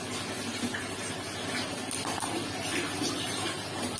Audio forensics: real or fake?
real